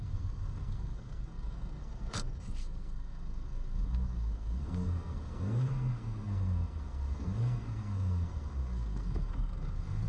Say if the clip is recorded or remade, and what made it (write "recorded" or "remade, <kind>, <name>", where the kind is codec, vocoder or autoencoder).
remade, codec, SNAC